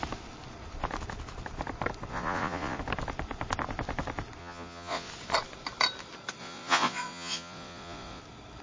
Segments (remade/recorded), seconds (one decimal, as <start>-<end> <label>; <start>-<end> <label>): 0.0-2.1 recorded; 2.1-2.8 remade; 2.8-4.4 recorded; 4.4-5.1 remade; 5.1-6.4 recorded; 6.4-8.2 remade; 8.2-8.6 recorded